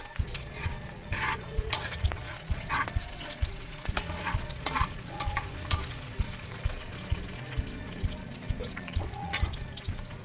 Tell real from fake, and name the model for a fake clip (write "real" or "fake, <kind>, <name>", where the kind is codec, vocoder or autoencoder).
fake, vocoder, Vocos